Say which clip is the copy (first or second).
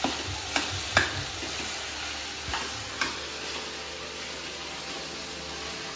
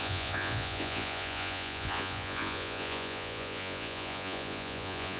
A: second